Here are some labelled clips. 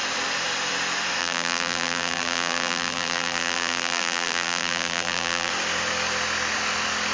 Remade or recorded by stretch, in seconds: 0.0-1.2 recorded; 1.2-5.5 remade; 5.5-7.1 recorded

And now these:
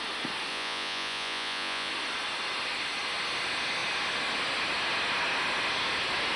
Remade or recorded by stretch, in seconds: 0.0-0.5 recorded; 0.5-1.9 remade; 1.9-6.4 recorded

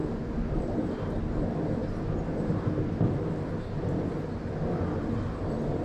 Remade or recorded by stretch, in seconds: 0.0-0.9 remade; 0.9-5.8 recorded